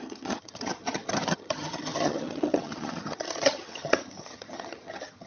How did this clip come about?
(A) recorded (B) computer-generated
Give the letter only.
B